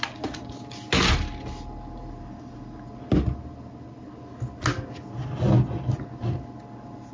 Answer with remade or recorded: recorded